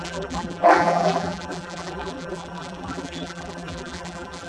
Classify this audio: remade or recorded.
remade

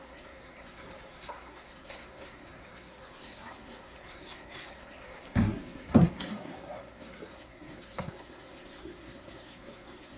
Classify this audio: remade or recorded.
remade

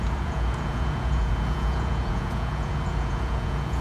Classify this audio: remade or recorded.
remade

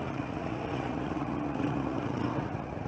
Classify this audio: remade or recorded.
remade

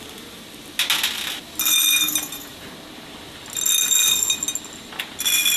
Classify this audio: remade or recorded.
recorded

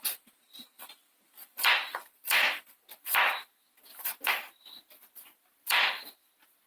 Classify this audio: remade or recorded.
recorded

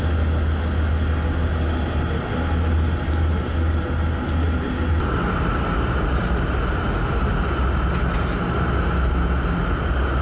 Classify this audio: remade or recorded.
recorded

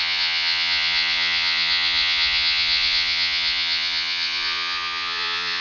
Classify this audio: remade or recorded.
remade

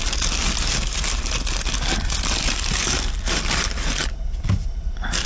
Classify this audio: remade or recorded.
recorded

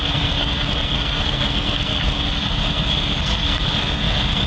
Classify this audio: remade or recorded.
remade